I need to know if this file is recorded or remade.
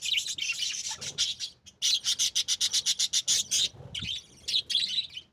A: recorded